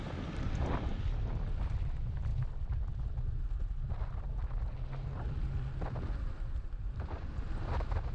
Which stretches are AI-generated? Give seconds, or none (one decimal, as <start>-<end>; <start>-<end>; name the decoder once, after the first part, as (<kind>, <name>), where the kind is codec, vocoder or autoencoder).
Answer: 0.0-2.3 (vocoder, BigVGAN v2); 7.1-8.1